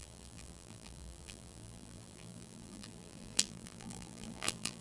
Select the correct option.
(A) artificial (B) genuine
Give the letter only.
A